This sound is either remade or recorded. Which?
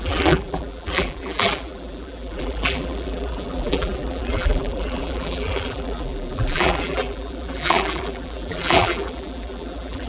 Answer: remade